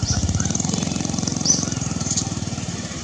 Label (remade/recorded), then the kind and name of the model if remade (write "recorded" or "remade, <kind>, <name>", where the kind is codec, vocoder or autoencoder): remade, vocoder, BigVGAN v2